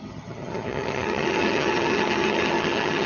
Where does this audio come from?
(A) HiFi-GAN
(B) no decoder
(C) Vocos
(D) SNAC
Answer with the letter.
A